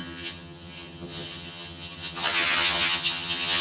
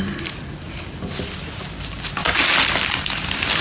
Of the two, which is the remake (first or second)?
first